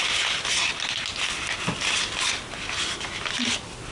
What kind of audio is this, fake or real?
real